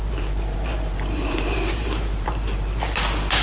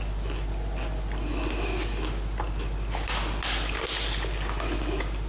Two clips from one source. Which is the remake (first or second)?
first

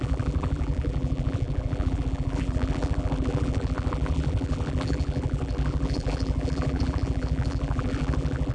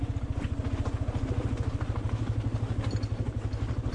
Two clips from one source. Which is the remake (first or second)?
first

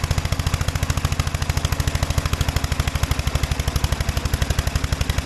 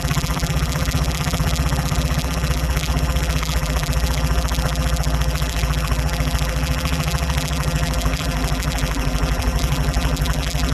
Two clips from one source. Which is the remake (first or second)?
second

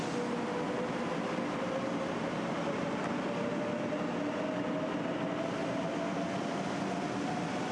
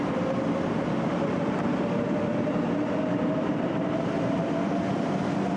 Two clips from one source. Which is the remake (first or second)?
second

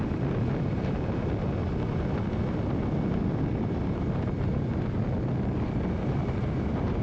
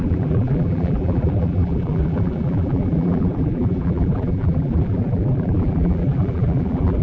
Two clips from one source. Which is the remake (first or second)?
second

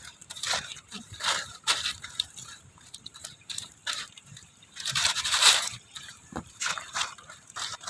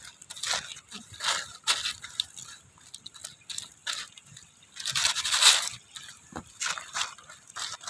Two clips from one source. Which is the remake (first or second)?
first